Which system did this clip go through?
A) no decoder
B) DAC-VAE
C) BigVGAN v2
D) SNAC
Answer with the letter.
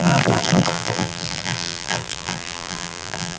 C